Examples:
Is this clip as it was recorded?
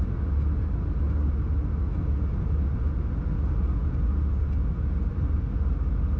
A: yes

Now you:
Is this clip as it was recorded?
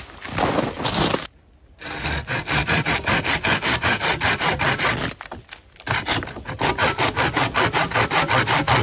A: yes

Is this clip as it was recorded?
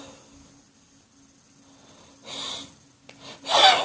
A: yes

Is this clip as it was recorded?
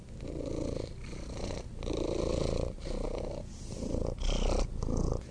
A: yes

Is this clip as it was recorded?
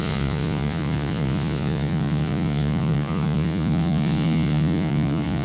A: no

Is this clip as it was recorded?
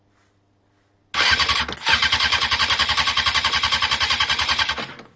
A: yes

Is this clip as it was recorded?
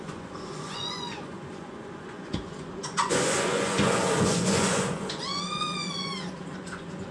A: no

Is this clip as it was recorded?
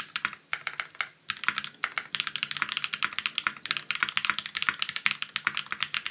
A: yes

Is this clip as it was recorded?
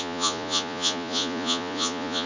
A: no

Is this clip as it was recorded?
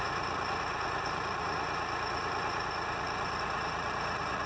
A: no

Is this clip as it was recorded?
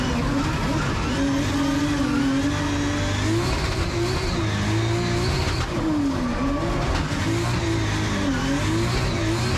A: yes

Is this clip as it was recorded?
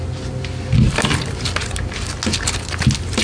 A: yes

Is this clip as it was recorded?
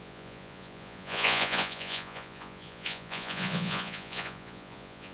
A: no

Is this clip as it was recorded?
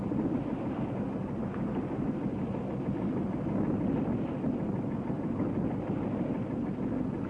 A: yes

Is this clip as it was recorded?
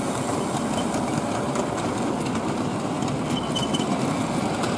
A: yes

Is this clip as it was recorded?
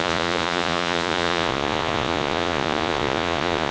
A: no